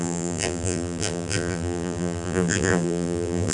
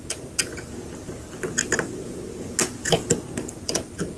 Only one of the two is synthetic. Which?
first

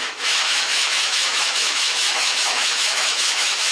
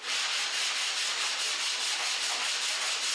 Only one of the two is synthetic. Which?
first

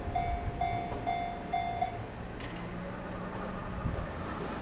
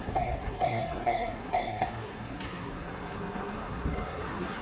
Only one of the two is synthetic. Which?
second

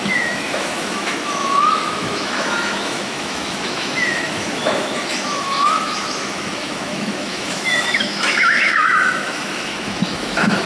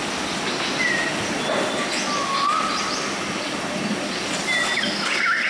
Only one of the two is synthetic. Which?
first